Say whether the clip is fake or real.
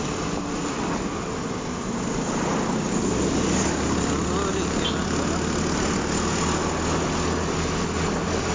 real